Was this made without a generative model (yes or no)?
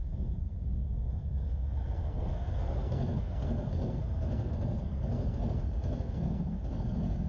no